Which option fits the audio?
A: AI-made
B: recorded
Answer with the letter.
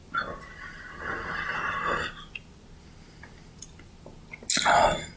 B